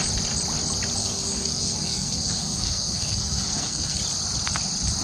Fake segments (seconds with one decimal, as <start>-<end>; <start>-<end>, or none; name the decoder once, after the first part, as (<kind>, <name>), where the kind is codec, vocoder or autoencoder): 1.0-4.0 (codec, SNAC)